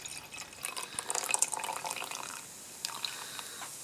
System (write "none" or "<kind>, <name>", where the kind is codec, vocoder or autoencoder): none